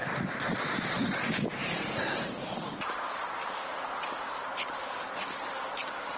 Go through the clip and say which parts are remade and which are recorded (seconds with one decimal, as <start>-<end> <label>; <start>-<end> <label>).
0.0-1.2 recorded; 1.2-6.2 remade